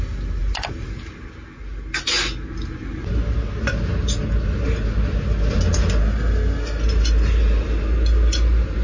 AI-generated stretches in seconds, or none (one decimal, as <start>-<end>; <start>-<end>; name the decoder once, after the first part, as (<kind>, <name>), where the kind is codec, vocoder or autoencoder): 6.0-6.8 (codec, SNAC)